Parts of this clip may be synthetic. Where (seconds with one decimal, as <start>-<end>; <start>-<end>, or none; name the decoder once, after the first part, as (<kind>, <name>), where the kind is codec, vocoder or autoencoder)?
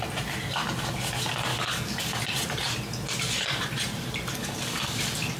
1.5-2.2 (codec, DAC); 4.4-5.0